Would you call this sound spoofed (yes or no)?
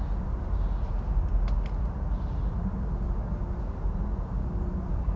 no